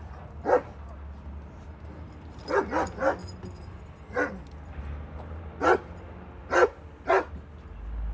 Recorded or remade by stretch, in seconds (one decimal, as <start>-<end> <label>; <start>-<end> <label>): 0.0-8.1 recorded